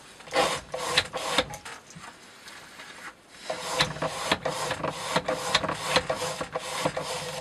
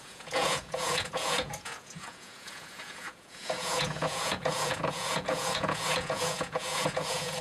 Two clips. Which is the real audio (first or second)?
first